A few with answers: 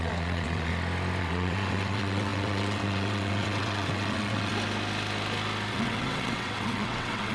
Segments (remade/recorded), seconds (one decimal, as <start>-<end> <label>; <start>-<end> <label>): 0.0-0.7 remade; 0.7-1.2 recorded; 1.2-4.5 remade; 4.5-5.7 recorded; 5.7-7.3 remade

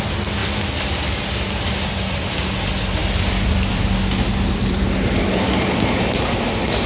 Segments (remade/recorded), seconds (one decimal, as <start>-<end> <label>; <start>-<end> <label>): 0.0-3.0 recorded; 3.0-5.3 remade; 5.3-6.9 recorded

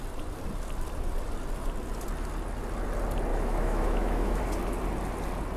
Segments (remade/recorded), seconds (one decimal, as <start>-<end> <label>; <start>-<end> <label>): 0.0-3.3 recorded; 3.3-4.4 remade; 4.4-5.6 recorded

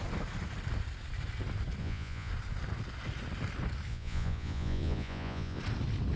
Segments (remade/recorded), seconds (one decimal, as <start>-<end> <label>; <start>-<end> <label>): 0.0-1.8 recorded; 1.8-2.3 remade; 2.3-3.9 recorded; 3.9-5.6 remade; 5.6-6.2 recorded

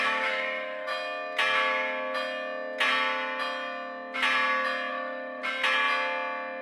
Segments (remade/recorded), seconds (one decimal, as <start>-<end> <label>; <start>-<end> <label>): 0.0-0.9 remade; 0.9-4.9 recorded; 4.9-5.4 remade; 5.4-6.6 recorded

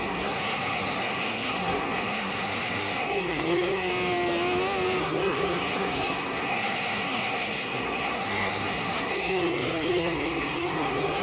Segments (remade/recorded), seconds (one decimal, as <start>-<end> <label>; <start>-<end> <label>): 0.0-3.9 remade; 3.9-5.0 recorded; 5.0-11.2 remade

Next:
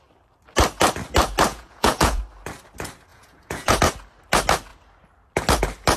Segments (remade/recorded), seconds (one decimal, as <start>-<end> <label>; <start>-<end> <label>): 0.0-1.5 recorded; 1.5-2.2 remade; 2.2-3.1 recorded; 3.1-3.8 remade; 3.8-6.0 recorded